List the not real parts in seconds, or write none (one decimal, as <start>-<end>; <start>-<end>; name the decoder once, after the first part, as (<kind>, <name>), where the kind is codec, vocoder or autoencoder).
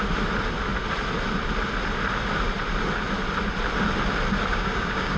4.5-5.2 (codec, DAC)